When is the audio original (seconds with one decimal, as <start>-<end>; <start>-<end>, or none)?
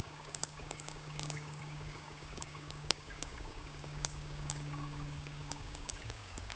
none